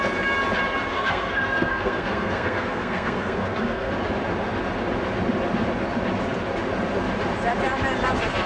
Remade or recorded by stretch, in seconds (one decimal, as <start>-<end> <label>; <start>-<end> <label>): 0.0-0.9 recorded; 0.9-3.9 remade; 3.9-8.5 recorded